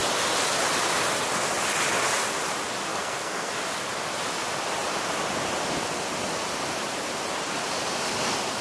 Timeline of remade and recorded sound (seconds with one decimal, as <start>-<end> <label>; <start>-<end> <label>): 0.0-2.9 recorded; 2.9-3.5 remade; 3.5-8.6 recorded